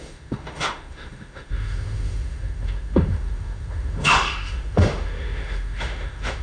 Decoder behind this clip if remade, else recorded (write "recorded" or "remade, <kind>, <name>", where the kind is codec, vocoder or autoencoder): remade, autoencoder, DAC-VAE